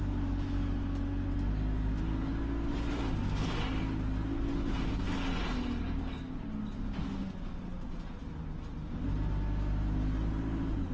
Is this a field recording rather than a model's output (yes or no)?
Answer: yes